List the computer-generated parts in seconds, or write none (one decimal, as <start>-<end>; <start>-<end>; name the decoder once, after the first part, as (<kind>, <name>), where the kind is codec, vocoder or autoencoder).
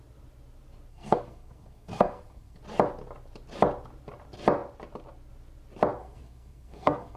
0.9-2.6 (codec, SNAC); 6.0-7.2